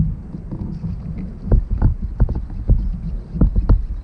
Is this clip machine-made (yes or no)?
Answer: no